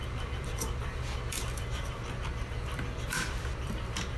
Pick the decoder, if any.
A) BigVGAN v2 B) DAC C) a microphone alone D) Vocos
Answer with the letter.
A